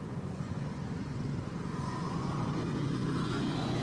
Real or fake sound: fake